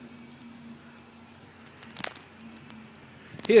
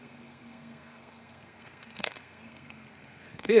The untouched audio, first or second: first